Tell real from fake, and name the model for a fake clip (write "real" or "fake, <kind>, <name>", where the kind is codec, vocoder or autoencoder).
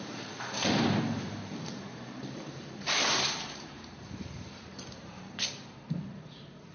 fake, vocoder, BigVGAN v2